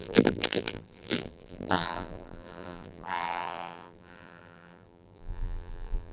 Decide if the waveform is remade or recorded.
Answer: remade